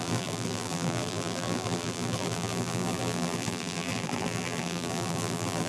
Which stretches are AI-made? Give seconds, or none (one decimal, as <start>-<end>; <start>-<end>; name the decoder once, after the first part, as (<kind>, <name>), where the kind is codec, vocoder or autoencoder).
0.0-5.7 (vocoder, BigVGAN v2)